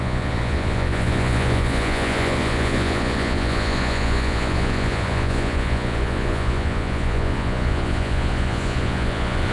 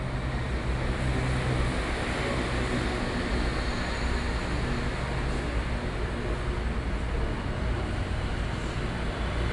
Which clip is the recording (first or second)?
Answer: second